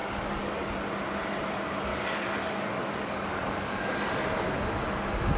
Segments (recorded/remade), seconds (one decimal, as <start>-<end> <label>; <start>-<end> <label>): 0.0-0.6 remade; 0.6-1.9 recorded; 1.9-3.9 remade; 3.9-5.4 recorded